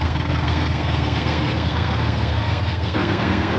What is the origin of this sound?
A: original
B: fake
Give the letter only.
B